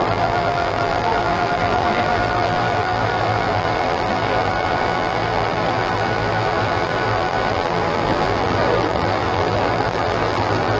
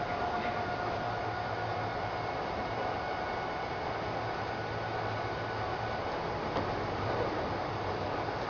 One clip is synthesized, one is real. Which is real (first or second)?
second